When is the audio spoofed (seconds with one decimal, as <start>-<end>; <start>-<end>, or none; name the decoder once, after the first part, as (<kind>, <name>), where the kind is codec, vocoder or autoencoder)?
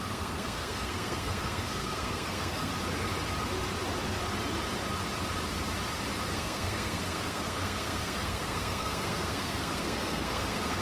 0.0-2.7 (codec, SNAC); 6.3-10.8